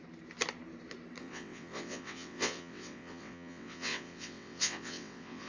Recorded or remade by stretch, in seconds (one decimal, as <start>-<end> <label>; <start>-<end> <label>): 0.0-1.2 recorded; 1.2-5.5 remade